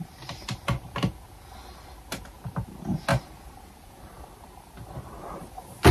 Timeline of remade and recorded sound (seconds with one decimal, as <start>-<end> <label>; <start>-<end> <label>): 0.0-3.1 recorded; 3.1-5.5 remade; 5.5-5.9 recorded

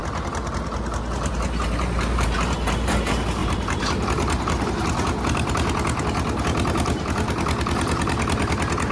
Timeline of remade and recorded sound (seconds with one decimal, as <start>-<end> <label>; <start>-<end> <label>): 0.0-3.4 recorded; 3.4-4.7 remade; 4.7-8.9 recorded